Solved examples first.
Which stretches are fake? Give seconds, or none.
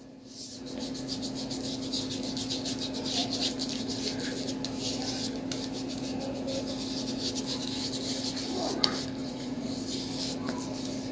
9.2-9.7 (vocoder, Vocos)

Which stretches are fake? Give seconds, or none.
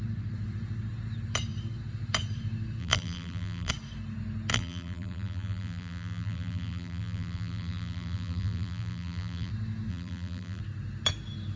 2.8-3.7 (vocoder, BigVGAN v2); 4.5-9.5; 9.9-10.6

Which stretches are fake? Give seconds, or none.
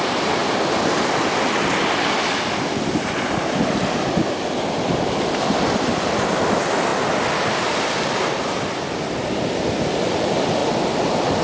0.0-0.4 (vocoder, BigVGAN v2); 5.2-6.9; 10.0-10.6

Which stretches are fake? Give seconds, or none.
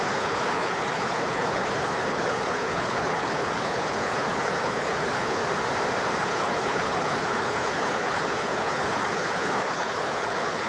0.0-5.4 (codec, HILCodec); 6.2-10.7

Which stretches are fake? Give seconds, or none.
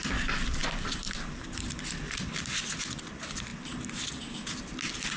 0.6-2.2 (vocoder, BigVGAN v2)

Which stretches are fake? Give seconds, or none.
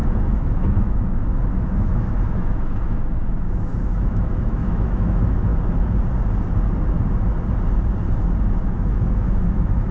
0.0-5.5 (autoencoder, DAC-VAE); 8.5-9.9